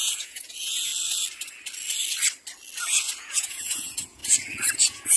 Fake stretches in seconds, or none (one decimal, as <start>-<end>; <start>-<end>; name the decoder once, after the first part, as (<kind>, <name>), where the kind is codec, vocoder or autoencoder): 0.0-0.9 (vocoder, Vocos); 3.2-4.2; 4.8-5.2